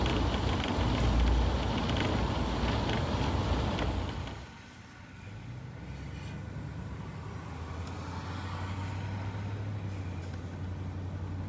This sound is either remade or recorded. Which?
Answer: recorded